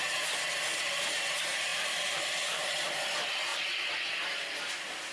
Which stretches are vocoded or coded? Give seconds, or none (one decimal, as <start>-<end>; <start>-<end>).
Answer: 1.7-3.0